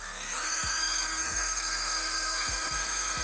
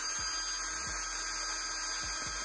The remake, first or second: first